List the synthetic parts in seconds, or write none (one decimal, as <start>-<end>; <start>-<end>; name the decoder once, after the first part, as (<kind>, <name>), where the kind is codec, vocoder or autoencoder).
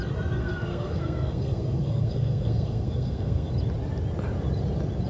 0.4-3.5 (codec, SNAC)